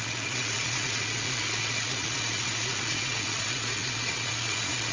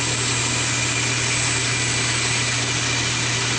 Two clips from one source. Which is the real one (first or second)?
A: second